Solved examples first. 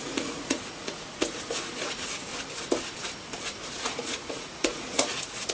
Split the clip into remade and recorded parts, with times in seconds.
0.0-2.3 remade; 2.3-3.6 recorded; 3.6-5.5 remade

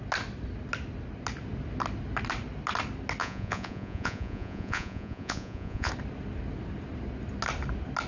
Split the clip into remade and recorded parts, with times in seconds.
0.0-3.2 recorded; 3.2-5.9 remade; 5.9-8.1 recorded

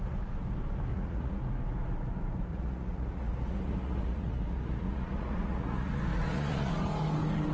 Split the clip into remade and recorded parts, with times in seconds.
0.0-0.9 recorded; 0.9-1.4 remade; 1.4-2.5 recorded; 2.5-6.7 remade; 6.7-7.5 recorded